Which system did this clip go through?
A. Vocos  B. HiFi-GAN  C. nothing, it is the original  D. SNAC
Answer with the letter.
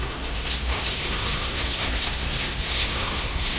D